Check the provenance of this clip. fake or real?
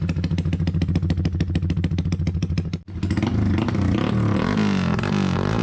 real